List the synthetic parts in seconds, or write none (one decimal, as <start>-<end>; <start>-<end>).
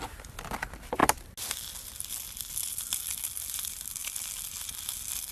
none